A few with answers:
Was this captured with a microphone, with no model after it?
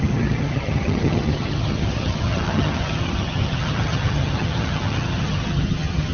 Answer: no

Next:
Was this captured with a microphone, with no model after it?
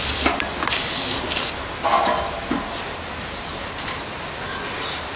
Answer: yes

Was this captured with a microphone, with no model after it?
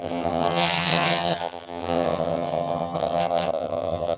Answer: no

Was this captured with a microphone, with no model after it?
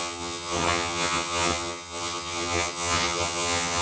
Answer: no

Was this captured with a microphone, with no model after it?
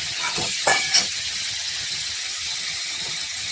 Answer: no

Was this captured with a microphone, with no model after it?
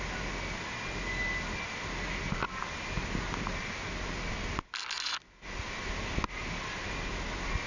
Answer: yes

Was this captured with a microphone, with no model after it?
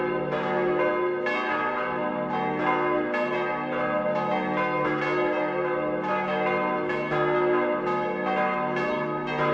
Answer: yes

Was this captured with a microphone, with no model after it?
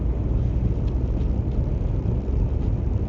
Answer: yes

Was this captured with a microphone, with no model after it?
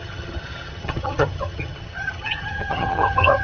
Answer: no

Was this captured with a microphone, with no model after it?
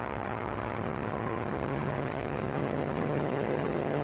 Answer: no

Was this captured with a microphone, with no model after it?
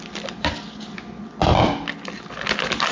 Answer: yes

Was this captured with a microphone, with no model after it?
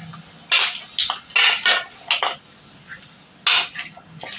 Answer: yes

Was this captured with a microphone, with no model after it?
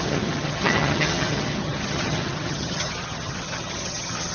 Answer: no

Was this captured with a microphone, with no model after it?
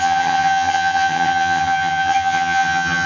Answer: no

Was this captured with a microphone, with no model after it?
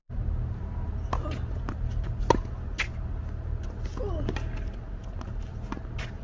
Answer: yes